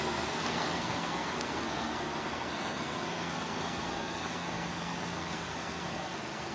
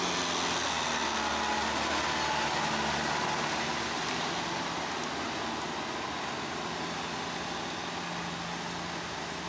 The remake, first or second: first